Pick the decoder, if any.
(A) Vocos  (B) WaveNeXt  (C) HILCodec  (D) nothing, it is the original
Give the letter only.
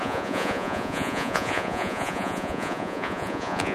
A